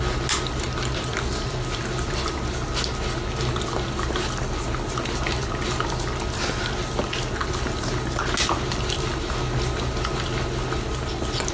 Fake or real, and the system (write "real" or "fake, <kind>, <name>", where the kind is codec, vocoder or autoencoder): real